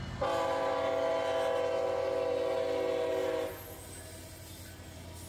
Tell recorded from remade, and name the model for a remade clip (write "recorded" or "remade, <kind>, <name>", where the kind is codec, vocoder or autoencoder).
recorded